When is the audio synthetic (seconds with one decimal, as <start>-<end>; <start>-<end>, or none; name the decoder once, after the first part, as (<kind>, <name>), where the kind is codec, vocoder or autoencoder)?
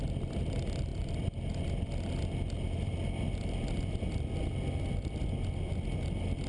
none